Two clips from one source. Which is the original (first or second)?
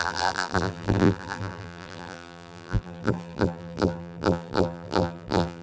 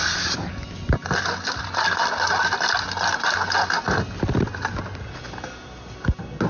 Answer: second